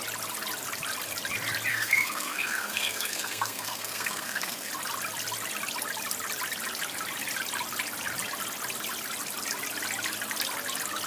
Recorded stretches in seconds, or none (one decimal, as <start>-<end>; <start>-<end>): 0.0-1.7; 4.7-11.1